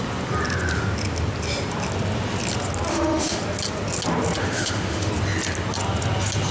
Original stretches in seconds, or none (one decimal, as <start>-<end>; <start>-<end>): 0.0-2.9; 3.4-4.4; 5.1-6.5